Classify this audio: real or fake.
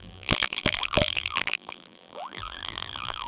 fake